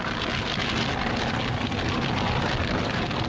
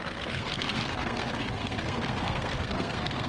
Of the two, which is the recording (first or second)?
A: first